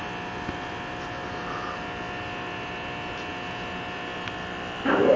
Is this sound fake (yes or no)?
no